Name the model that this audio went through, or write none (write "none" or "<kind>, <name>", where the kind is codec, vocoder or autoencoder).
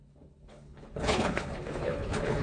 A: codec, HILCodec